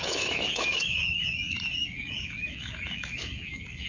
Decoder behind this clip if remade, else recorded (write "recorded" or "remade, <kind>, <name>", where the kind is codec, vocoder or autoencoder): remade, autoencoder, DAC-VAE